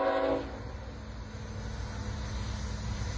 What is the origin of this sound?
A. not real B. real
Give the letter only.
B